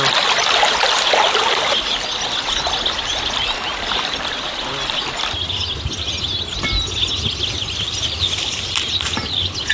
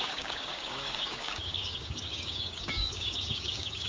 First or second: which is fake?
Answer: second